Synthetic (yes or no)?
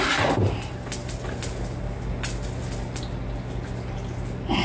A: no